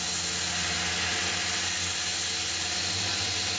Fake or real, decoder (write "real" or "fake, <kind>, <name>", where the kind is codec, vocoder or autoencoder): real